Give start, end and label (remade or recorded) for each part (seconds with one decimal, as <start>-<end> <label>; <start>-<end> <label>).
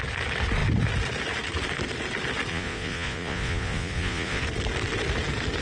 0.0-2.5 recorded; 2.5-4.4 remade; 4.4-5.6 recorded